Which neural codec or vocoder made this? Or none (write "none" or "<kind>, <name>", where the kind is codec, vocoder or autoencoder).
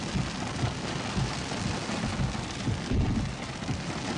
none